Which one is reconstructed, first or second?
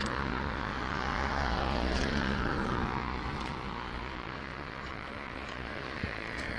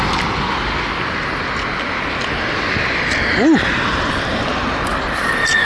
first